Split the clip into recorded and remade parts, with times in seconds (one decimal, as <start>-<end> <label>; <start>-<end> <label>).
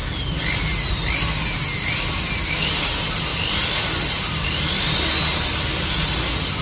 0.0-6.6 recorded